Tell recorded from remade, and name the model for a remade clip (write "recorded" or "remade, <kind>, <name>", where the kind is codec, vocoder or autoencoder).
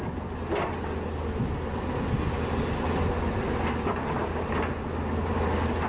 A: recorded